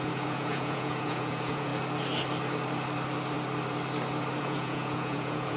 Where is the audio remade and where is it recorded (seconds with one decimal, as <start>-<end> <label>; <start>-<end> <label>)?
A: 0.0-1.7 remade; 1.7-4.4 recorded; 4.4-5.6 remade